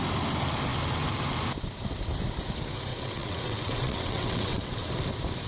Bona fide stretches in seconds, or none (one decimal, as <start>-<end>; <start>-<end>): 0.0-2.9; 4.9-5.5